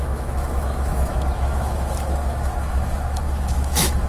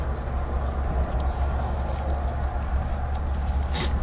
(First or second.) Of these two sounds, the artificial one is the first